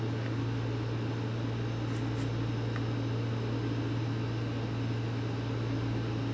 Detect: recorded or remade recorded